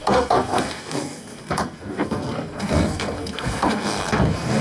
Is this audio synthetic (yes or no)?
yes